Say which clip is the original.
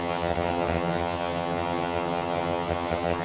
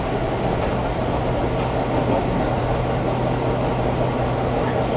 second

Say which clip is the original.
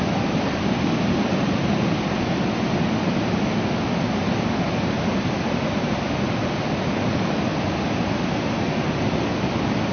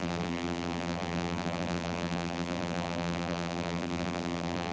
first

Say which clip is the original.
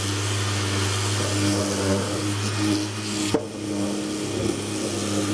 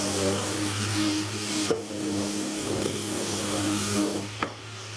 first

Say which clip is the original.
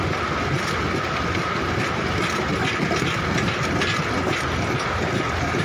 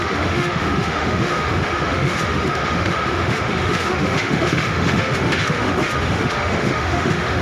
first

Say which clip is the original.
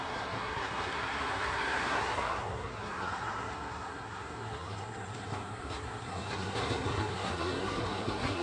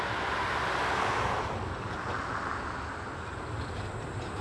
second